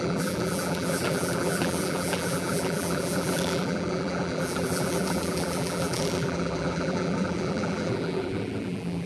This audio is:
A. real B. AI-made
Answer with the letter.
B